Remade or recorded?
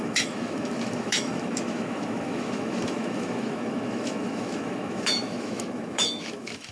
remade